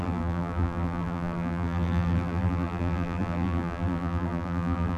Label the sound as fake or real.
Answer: fake